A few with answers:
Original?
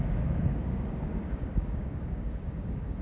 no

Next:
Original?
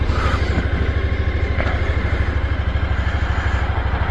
yes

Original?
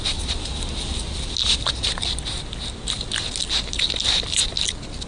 yes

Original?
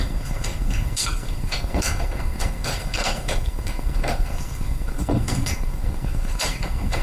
no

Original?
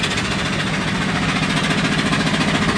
yes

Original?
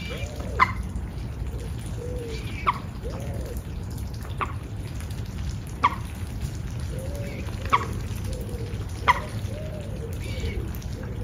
yes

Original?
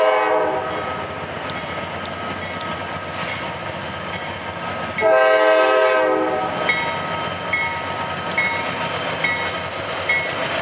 yes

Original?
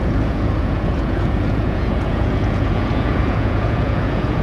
no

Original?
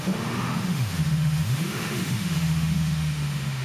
no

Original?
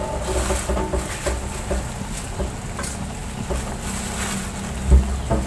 yes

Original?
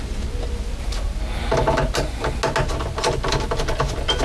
yes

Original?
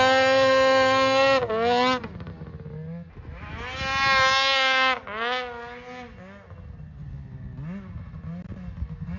yes